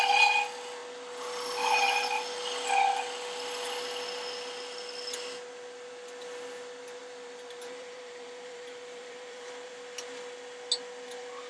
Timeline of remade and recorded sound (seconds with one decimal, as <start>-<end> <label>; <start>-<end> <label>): 0.0-7.0 recorded; 7.0-9.7 remade; 9.7-11.5 recorded